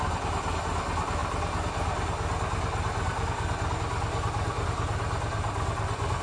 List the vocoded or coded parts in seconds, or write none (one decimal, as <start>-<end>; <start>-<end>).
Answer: none